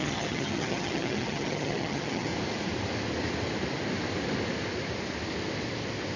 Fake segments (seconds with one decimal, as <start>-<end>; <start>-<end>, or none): 0.0-2.3